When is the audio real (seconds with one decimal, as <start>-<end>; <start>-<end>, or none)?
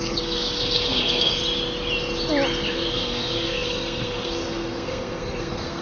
1.4-2.7